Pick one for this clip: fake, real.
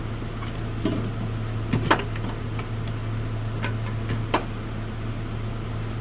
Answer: real